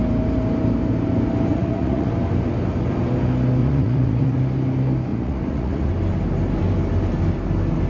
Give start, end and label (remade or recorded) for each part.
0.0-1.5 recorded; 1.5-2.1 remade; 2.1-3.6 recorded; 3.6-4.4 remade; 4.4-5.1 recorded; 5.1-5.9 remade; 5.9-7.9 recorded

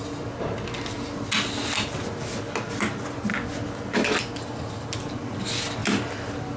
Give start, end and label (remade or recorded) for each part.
0.0-6.6 recorded

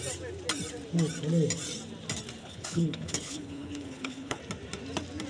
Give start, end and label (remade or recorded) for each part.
0.0-2.4 recorded; 2.4-4.4 remade; 4.4-5.3 recorded

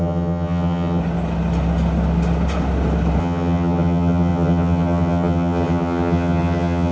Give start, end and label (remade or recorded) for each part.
0.0-1.0 remade; 1.0-3.2 recorded; 3.2-6.9 remade

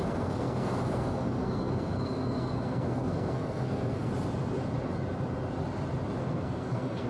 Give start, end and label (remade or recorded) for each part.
0.0-4.1 remade; 4.1-6.2 recorded; 6.2-7.1 remade